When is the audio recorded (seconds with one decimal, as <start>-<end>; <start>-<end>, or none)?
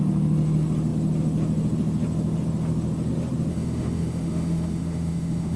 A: 0.0-3.5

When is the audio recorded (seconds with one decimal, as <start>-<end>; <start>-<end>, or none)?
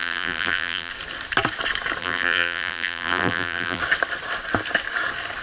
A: 0.9-2.0; 3.8-5.4